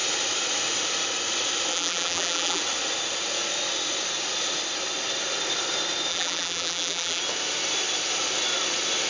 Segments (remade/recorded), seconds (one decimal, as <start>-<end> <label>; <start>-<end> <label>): 0.0-1.7 recorded; 1.7-2.6 remade; 2.6-6.1 recorded; 6.1-7.2 remade; 7.2-9.1 recorded